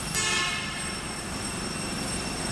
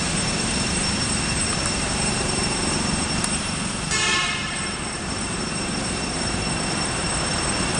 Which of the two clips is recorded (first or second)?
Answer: first